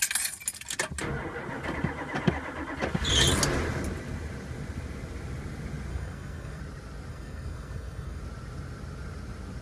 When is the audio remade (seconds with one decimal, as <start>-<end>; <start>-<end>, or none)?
5.9-6.6; 7.1-8.2